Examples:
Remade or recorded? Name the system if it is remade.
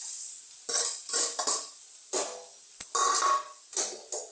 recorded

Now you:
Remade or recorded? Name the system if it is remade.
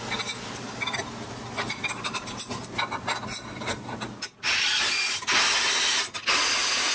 recorded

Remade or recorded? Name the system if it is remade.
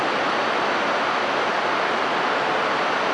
recorded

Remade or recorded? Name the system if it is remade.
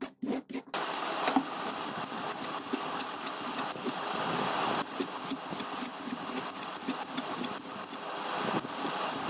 recorded